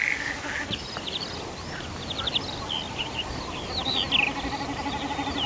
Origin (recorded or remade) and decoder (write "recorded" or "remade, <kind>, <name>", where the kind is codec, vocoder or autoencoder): recorded